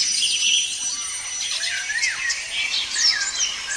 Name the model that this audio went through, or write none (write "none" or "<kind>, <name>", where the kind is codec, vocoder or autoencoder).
none